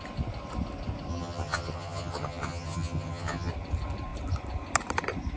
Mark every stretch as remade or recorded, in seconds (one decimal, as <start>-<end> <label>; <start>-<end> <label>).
0.0-1.1 recorded; 1.1-3.5 remade; 3.5-5.4 recorded